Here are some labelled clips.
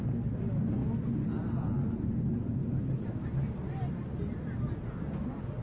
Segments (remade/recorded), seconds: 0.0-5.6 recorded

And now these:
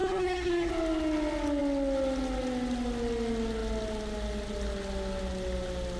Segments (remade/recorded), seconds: 0.0-0.7 remade; 0.7-6.0 recorded

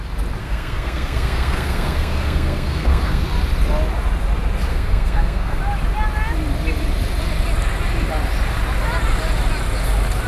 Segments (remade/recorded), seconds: 0.0-0.4 recorded; 0.4-3.2 remade; 3.2-4.7 recorded; 4.7-5.6 remade; 5.6-10.3 recorded

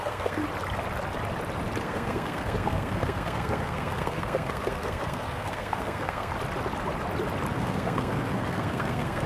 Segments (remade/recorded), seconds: 0.0-0.4 remade; 0.4-1.8 recorded; 1.8-6.3 remade; 6.3-7.5 recorded; 7.5-9.3 remade